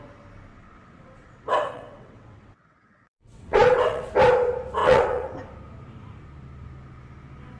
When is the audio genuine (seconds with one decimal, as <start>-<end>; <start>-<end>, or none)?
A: 0.0-0.5; 4.1-4.8; 5.3-7.6